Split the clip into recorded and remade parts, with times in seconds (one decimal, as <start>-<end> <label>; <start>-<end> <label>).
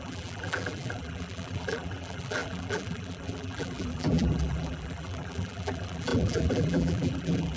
0.0-7.6 remade